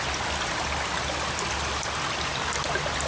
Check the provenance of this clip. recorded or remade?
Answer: recorded